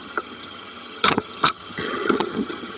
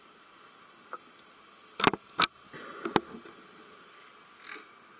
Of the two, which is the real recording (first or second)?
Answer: second